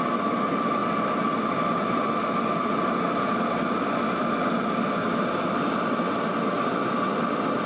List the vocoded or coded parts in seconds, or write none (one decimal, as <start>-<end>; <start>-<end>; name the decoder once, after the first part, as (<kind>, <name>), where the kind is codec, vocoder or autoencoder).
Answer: none